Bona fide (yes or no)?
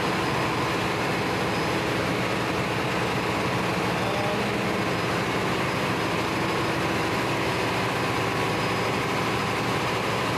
yes